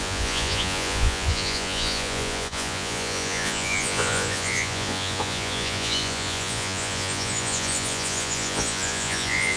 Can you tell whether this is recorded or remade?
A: remade